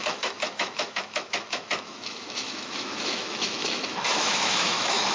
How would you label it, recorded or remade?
remade